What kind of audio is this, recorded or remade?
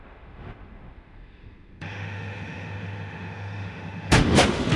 remade